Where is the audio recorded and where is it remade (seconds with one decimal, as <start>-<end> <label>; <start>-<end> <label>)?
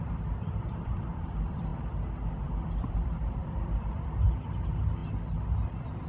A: 0.0-1.7 remade; 1.7-2.3 recorded; 2.3-5.0 remade; 5.0-6.1 recorded